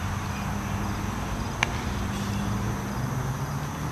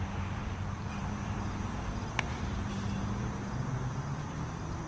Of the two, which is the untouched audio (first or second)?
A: first